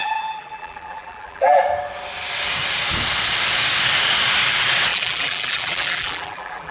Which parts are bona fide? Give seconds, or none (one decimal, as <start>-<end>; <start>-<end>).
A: 1.6-4.9